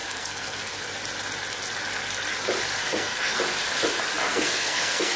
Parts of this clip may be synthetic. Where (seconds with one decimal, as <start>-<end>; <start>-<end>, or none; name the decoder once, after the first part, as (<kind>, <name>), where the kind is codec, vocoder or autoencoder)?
0.0-0.8 (codec, SNAC); 2.8-3.4; 4.3-5.2